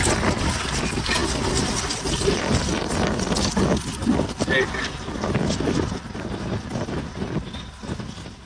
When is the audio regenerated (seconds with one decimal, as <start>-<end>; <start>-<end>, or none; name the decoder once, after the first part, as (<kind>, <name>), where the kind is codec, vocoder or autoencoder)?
none